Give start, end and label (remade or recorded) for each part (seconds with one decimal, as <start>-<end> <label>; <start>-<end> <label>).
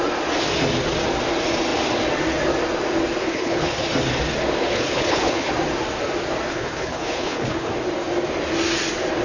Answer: 0.0-3.2 recorded; 3.2-3.9 remade; 3.9-4.6 recorded; 4.6-5.5 remade; 5.5-6.5 recorded; 6.5-7.7 remade; 7.7-9.2 recorded